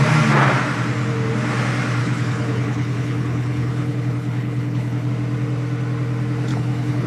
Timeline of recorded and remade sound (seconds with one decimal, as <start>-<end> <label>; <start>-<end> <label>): 0.0-2.0 recorded; 2.0-5.1 remade; 5.1-6.5 recorded; 6.5-7.1 remade